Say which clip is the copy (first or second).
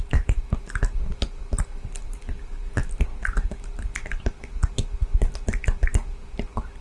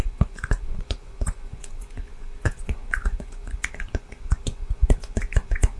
second